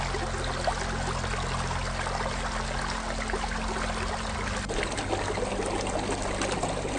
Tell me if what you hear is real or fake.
real